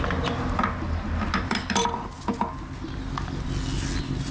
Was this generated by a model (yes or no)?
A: no